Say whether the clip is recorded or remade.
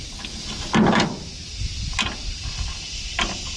recorded